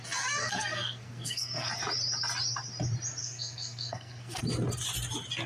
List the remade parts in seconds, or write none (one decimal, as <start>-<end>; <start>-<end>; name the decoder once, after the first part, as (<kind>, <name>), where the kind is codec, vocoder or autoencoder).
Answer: 0.4-1.7 (codec, SNAC); 3.2-4.4